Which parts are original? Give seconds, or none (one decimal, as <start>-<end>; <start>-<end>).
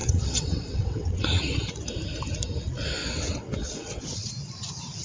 1.7-3.0; 4.3-5.0